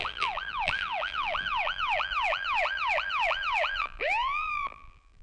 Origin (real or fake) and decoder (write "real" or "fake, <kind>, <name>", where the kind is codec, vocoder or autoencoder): fake, vocoder, BigVGAN v2